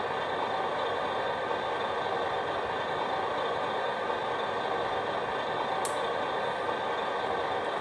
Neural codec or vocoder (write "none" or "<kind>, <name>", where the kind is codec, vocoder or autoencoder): none